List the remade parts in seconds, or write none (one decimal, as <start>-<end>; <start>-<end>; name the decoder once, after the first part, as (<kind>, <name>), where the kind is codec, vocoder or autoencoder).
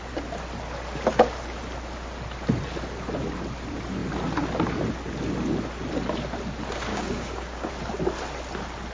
6.9-7.7 (codec, DAC)